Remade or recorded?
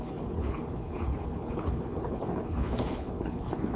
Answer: remade